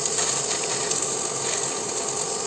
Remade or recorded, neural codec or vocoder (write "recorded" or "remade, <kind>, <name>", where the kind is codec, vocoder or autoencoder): recorded